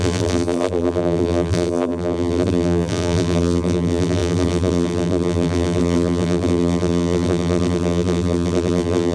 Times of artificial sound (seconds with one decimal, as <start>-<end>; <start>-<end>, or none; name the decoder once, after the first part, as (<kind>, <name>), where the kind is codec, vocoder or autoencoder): 0.0-9.1 (vocoder, BigVGAN v2)